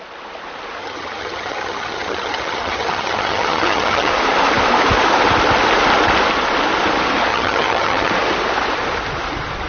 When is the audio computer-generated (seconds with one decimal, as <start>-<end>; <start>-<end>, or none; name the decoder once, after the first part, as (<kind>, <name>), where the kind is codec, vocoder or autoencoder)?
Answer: 0.8-4.1 (vocoder, HiFi-GAN); 7.3-8.1